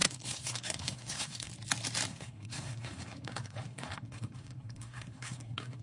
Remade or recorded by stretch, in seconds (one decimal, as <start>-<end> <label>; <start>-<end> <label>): 0.0-1.5 remade; 1.5-2.1 recorded; 2.1-5.8 remade